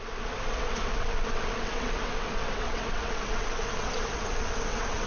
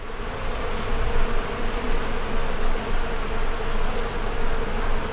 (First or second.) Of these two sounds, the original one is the second